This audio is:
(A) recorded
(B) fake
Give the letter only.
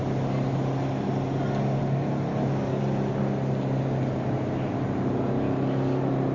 A